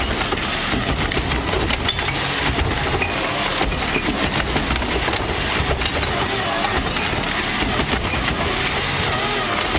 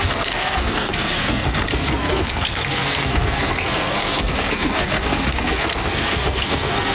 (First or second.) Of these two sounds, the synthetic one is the second